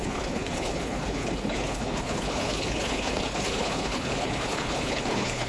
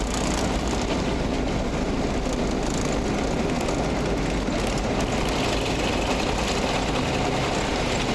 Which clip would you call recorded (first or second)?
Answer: second